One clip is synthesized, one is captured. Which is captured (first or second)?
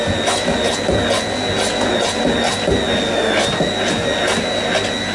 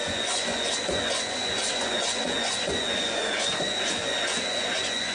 first